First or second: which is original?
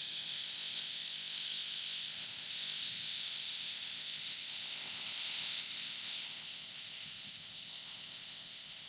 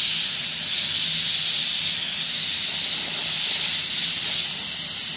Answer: second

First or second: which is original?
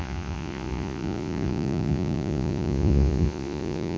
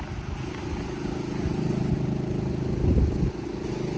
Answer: second